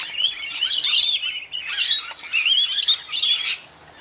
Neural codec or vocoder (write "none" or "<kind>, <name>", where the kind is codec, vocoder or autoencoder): none